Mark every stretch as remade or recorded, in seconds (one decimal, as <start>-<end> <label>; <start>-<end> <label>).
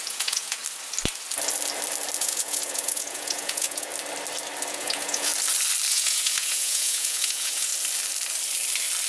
0.0-0.6 remade; 0.6-2.2 recorded; 2.2-3.9 remade; 3.9-4.7 recorded; 4.7-5.3 remade; 5.3-5.9 recorded; 5.9-7.7 remade; 7.7-9.1 recorded